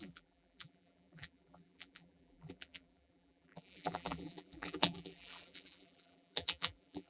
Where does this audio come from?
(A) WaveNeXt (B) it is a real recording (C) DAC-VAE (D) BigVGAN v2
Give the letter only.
D